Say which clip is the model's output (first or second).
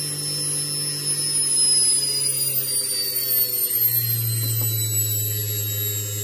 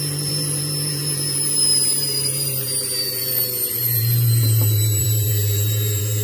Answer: second